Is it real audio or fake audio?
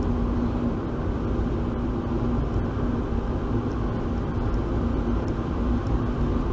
real